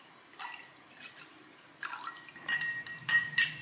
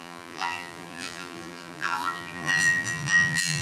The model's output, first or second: second